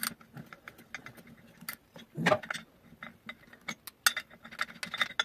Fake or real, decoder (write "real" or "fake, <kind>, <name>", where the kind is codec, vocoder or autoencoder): real